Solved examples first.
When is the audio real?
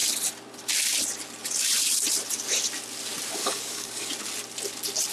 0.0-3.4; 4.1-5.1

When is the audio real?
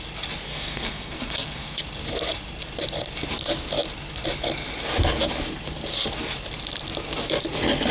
0.0-0.5; 1.8-7.9